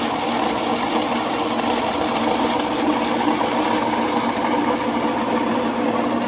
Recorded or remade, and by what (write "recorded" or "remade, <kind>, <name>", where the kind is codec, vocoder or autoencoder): recorded